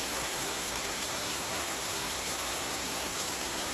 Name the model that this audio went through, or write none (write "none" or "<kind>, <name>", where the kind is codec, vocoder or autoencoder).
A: codec, SNAC